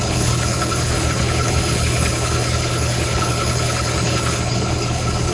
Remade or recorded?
remade